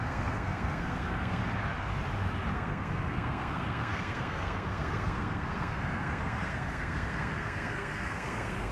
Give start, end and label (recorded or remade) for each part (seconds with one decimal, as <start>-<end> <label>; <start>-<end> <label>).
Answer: 0.0-1.4 remade; 1.4-2.5 recorded; 2.5-8.7 remade